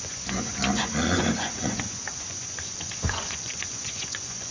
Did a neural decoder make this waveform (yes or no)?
yes